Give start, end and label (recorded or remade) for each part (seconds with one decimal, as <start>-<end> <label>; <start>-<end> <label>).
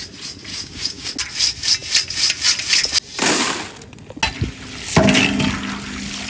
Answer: 0.0-0.5 recorded; 0.5-1.1 remade; 1.1-6.3 recorded